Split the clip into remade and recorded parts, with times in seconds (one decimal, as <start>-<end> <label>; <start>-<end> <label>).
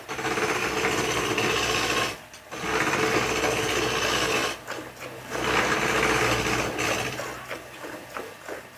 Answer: 0.0-8.8 recorded